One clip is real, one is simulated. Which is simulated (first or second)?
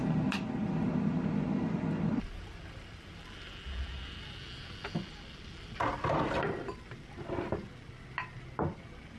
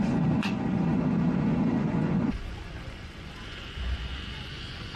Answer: second